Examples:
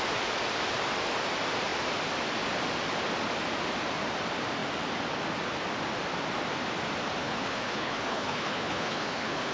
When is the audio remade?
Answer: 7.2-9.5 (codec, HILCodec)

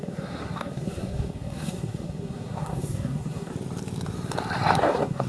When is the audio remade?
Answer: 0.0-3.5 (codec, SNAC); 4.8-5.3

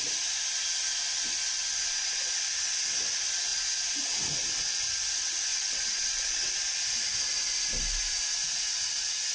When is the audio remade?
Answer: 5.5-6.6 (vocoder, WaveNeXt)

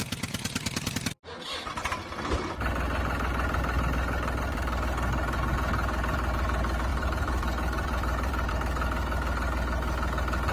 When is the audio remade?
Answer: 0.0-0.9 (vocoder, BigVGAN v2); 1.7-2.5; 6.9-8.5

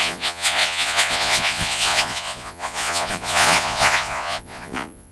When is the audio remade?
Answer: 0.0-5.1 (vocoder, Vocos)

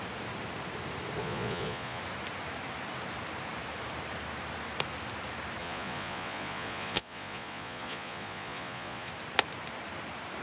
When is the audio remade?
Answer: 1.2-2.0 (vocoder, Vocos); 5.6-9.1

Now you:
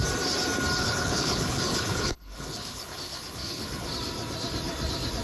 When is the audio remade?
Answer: 0.8-3.9 (codec, HILCodec)